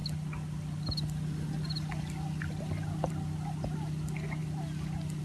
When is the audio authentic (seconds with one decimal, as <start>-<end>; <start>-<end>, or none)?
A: 0.0-5.2